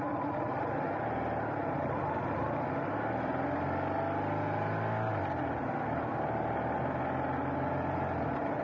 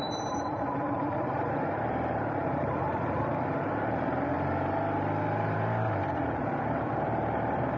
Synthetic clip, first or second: second